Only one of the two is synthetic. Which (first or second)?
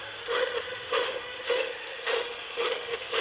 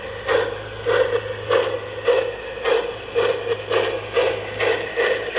first